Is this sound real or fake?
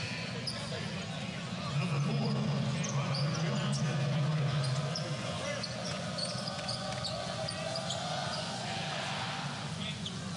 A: fake